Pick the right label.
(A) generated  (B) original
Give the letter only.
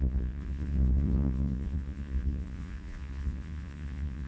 A